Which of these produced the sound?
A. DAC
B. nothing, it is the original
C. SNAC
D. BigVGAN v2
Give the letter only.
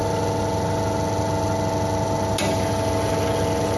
B